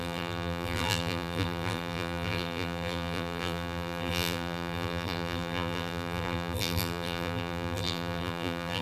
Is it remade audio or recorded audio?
remade